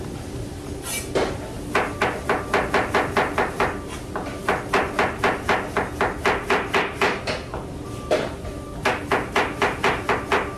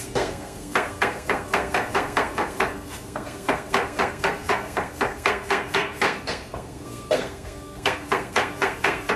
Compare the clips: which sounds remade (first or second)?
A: second